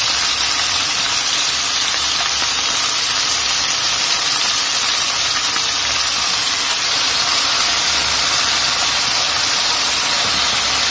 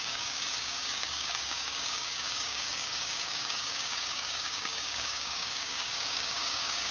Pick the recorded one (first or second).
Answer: first